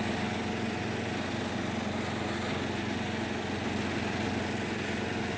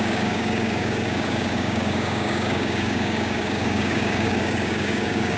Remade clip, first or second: second